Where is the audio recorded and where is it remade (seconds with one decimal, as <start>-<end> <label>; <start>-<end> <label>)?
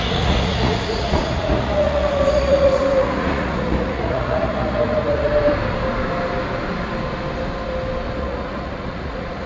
0.0-5.3 remade; 5.3-8.2 recorded; 8.2-9.5 remade